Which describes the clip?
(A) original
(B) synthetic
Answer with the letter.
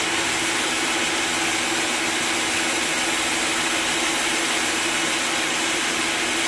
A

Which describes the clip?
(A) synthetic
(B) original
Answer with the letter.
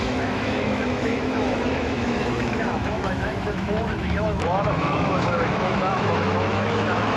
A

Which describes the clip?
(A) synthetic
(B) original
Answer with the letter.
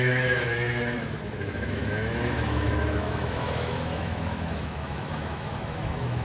A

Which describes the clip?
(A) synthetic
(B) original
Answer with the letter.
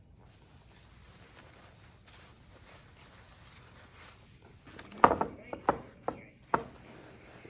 B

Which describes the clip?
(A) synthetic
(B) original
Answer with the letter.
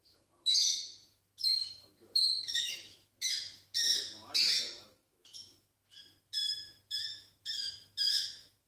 A